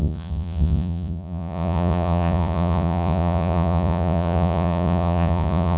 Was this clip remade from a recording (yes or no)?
yes